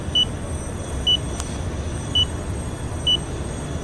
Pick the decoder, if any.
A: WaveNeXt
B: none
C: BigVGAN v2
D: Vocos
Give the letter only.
B